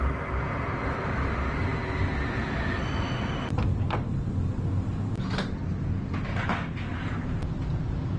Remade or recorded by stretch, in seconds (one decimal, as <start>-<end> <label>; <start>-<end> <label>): 0.0-8.2 recorded